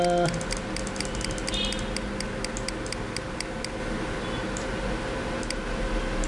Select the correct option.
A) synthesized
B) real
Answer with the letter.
B